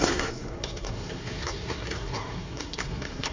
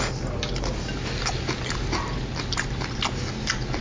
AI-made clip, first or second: first